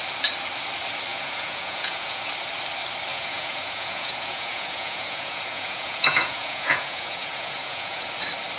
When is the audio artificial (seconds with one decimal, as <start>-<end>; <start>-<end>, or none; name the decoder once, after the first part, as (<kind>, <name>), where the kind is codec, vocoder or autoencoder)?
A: 1.1-2.3 (vocoder, Vocos); 3.1-8.1